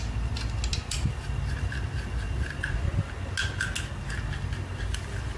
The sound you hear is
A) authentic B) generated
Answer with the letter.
A